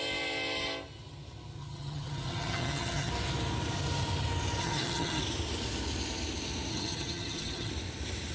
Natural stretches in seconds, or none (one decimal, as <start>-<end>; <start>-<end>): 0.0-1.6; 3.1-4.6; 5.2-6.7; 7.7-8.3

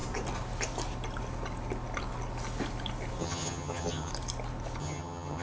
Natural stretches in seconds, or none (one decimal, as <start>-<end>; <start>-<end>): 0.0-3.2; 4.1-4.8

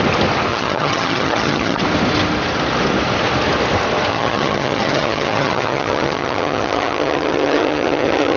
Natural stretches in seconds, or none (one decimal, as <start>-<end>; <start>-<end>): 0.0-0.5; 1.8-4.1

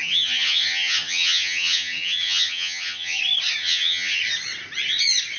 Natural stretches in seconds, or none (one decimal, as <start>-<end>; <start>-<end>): 3.2-3.6; 4.2-5.4

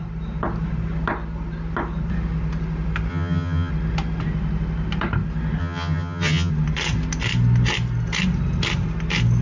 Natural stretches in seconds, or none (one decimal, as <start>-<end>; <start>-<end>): 0.0-3.1; 3.7-5.6; 6.5-9.4

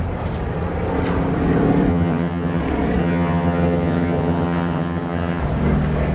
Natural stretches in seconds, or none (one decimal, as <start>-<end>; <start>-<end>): 0.0-1.9; 2.6-3.0; 5.4-6.1